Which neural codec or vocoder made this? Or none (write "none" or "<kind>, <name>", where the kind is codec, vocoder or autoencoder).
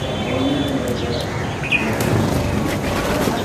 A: none